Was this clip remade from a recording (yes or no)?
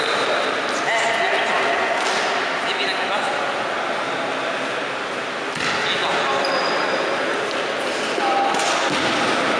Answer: no